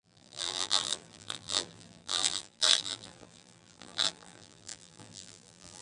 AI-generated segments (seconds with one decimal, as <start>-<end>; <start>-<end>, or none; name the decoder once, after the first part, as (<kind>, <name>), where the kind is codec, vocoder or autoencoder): 0.0-5.8 (vocoder, BigVGAN v2)